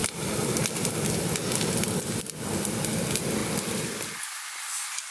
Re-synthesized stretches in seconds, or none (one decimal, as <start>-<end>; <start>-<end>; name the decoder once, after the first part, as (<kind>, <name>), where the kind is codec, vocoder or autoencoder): none